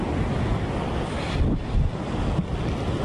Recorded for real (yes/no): yes